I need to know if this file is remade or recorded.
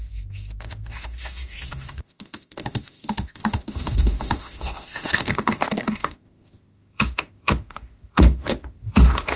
remade